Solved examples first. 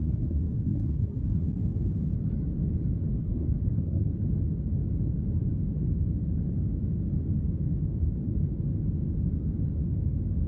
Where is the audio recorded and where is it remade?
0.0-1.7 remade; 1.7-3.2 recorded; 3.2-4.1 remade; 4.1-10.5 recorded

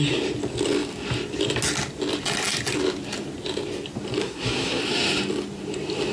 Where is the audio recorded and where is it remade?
0.0-4.2 recorded; 4.2-4.8 remade; 4.8-6.1 recorded

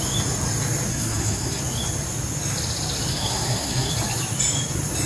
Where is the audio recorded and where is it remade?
0.0-0.9 recorded; 0.9-1.6 remade; 1.6-3.1 recorded; 3.1-3.9 remade; 3.9-5.1 recorded

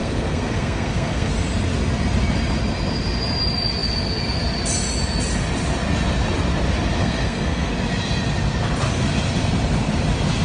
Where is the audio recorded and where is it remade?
0.0-1.3 remade; 1.3-7.0 recorded; 7.0-7.7 remade; 7.7-10.4 recorded

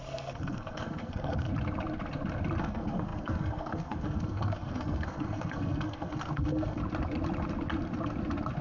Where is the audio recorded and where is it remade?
0.0-1.5 remade; 1.5-2.6 recorded; 2.6-6.8 remade; 6.8-8.6 recorded

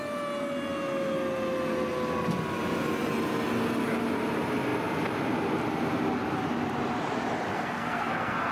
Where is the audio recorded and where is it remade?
0.0-7.5 recorded; 7.5-8.5 remade